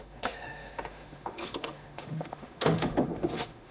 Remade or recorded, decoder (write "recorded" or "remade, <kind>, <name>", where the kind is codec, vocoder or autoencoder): remade, autoencoder, DAC-VAE